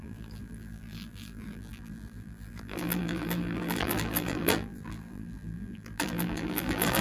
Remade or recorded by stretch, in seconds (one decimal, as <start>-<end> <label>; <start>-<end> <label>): 0.0-7.0 remade